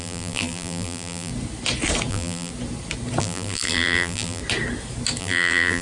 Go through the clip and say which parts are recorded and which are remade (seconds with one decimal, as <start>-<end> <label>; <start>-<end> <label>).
0.0-1.3 remade; 1.3-2.1 recorded; 2.1-2.5 remade; 2.5-3.2 recorded; 3.2-4.4 remade; 4.4-5.2 recorded; 5.2-5.8 remade